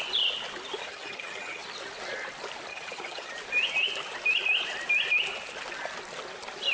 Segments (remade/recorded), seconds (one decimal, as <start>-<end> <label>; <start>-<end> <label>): 0.0-0.8 recorded; 0.8-1.6 remade; 1.6-2.7 recorded; 2.7-3.3 remade; 3.3-6.7 recorded